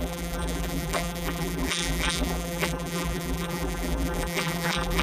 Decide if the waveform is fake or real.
fake